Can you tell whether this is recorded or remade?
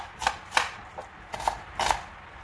recorded